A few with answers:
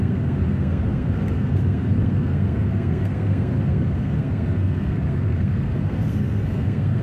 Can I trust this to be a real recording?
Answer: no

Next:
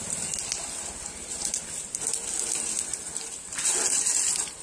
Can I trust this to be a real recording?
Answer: yes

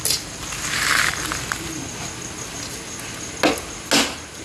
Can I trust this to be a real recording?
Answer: yes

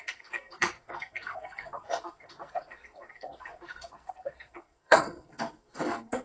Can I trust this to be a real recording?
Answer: no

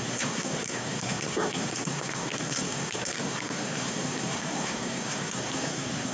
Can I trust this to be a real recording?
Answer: no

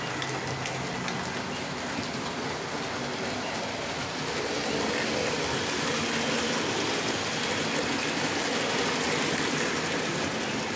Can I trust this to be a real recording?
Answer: yes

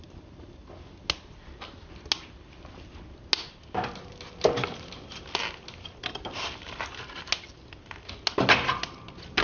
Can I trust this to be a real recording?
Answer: yes